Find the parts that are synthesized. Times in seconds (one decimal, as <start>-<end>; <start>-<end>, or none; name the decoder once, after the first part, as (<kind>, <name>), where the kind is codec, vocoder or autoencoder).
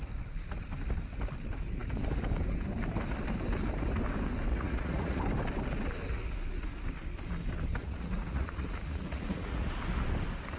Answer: 4.5-5.2 (vocoder, Vocos); 7.8-9.7